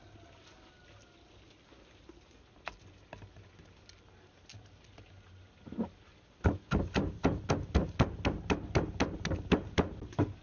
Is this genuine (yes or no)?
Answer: yes